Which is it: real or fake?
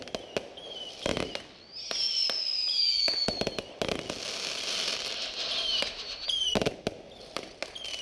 real